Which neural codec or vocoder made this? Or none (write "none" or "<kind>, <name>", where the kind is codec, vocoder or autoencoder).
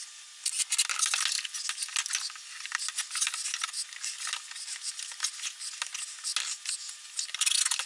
none